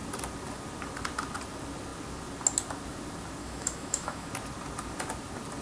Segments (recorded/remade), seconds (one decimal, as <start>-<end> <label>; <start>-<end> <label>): 0.0-3.4 recorded; 3.4-4.3 remade; 4.3-5.6 recorded